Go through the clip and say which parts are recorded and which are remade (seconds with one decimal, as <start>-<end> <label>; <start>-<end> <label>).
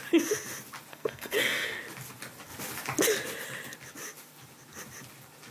0.0-0.9 recorded; 0.9-1.8 remade; 1.8-5.5 recorded